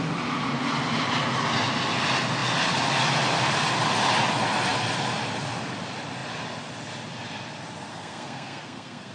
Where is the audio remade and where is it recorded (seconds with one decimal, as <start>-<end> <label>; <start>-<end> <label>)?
0.0-7.9 recorded; 7.9-9.1 remade